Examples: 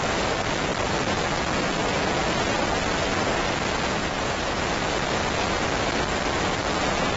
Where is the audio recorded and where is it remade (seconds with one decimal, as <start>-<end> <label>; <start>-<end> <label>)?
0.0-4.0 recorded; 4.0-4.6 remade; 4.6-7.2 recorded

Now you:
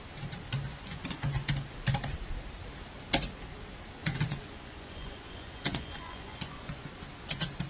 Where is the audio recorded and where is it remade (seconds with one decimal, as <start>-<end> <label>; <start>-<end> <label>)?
0.0-0.7 recorded; 0.7-1.5 remade; 1.5-4.0 recorded; 4.0-6.9 remade; 6.9-7.7 recorded

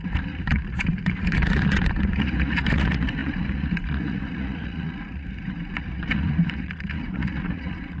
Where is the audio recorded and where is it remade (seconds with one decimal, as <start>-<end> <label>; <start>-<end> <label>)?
0.0-8.0 remade

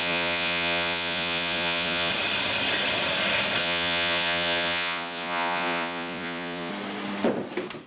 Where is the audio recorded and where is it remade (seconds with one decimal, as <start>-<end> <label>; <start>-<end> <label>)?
0.0-2.1 remade; 2.1-3.6 recorded; 3.6-6.7 remade; 6.7-7.9 recorded

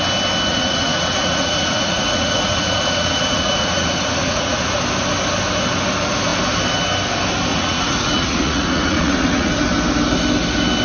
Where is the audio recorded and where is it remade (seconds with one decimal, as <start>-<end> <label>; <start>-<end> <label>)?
0.0-0.5 recorded; 0.5-4.8 remade; 4.8-7.5 recorded; 7.5-9.5 remade; 9.5-10.8 recorded